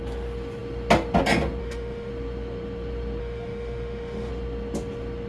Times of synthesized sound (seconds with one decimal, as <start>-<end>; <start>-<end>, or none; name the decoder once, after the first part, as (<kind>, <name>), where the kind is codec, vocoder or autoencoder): 1.6-2.1 (autoencoder, DAC-VAE); 3.2-4.3